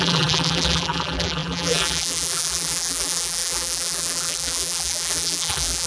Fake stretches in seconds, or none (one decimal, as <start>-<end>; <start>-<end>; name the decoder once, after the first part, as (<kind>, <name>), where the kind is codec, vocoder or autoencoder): 0.0-5.9 (vocoder, BigVGAN v2)